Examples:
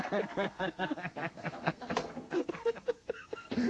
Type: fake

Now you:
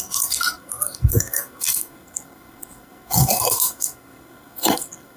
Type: fake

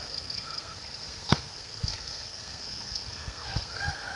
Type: fake